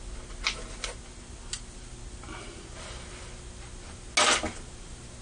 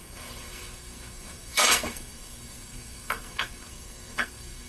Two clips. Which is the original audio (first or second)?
first